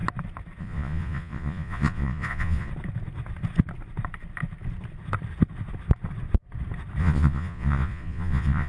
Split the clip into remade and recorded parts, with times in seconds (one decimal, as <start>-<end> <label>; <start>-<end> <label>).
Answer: 0.0-0.6 recorded; 0.6-2.7 remade; 2.7-7.0 recorded; 7.0-8.7 remade